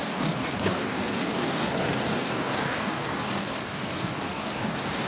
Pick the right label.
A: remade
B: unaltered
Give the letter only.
A